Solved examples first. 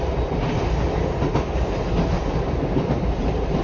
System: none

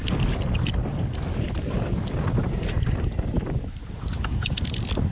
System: none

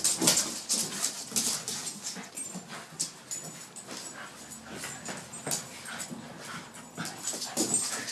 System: none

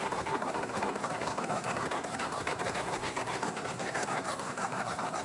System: codec, SNAC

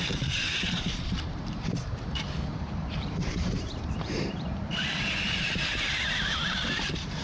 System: vocoder, BigVGAN v2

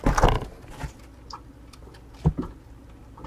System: none